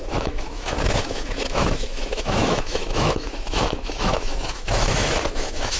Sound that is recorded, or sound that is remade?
remade